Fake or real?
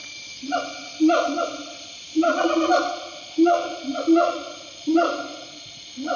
fake